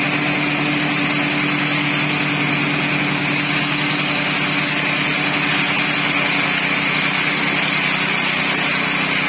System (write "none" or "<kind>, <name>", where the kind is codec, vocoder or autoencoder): none